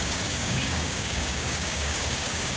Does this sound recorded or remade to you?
remade